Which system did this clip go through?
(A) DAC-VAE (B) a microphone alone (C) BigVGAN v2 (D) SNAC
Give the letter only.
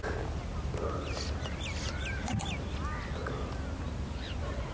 B